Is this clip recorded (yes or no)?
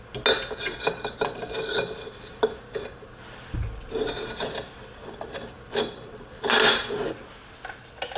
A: yes